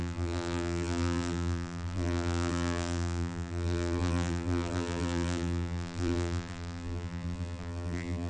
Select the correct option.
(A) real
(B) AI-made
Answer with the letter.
B